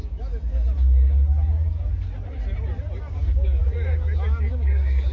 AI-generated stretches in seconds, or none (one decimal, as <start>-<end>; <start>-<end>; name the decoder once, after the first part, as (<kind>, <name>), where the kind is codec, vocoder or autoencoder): 3.1-3.6 (codec, DAC); 4.5-5.1